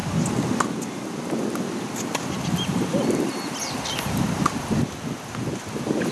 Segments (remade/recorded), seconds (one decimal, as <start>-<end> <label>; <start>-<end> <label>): 0.0-6.1 recorded